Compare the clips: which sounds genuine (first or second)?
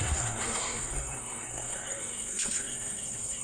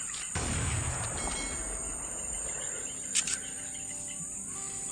second